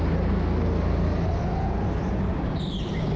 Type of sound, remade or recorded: recorded